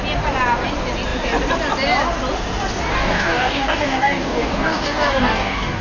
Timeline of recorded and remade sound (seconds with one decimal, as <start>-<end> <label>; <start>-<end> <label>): 0.0-2.9 recorded; 2.9-5.8 remade